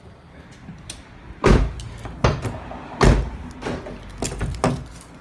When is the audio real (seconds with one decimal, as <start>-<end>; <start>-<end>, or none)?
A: 0.0-5.2